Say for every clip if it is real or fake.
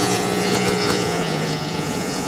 fake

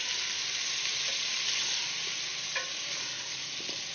real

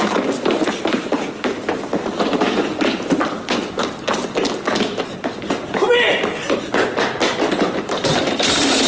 real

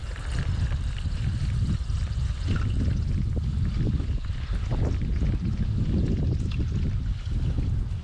real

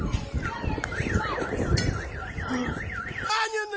real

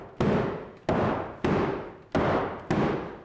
real